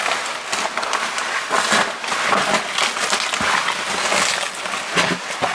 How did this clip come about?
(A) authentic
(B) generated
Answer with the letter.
A